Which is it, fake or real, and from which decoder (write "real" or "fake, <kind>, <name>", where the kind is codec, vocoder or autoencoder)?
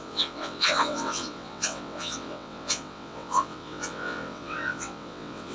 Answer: fake, vocoder, WaveNeXt